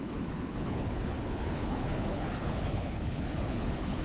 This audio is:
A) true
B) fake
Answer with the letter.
B